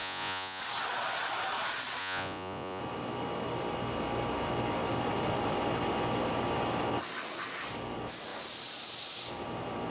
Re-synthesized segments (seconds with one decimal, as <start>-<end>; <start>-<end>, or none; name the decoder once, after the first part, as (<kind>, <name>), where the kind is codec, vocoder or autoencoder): 0.0-0.6 (vocoder, Vocos); 2.0-2.8